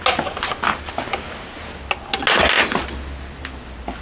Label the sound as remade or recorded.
recorded